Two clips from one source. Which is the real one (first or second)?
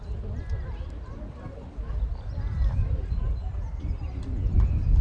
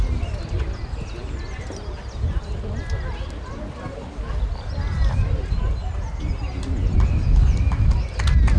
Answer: second